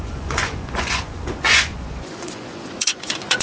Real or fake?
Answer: fake